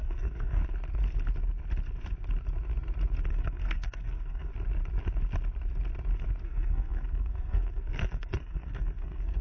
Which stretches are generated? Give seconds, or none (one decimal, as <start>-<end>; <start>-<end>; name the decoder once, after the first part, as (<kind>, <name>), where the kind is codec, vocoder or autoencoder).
0.0-0.6 (codec, SNAC); 3.3-4.5; 6.4-9.4